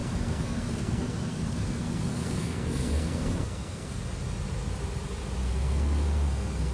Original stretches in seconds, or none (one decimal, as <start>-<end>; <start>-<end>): 4.0-5.4